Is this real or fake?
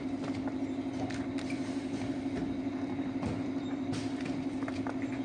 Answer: real